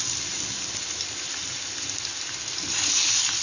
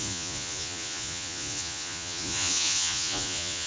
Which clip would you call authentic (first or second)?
first